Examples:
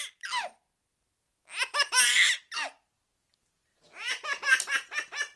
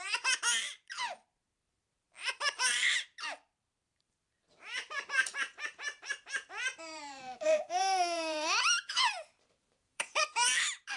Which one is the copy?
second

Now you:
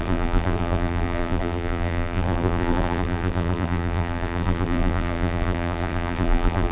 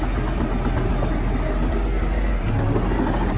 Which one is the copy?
first